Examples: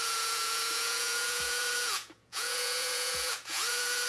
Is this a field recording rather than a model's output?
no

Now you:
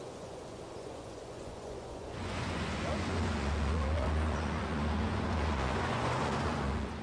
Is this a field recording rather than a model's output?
no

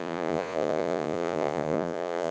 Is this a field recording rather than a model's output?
no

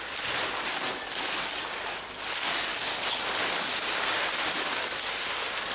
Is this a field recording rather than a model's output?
yes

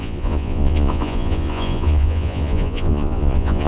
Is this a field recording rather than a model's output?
no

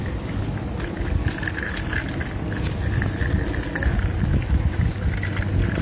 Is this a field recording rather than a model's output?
yes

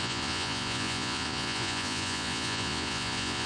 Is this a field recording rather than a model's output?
no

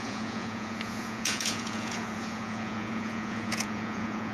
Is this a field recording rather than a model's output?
no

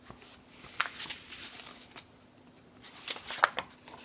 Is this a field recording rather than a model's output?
yes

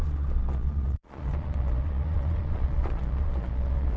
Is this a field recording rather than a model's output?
no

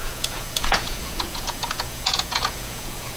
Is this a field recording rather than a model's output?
no